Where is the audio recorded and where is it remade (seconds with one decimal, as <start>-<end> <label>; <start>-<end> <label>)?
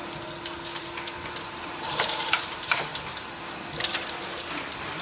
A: 0.0-0.8 recorded; 0.8-2.9 remade; 2.9-5.0 recorded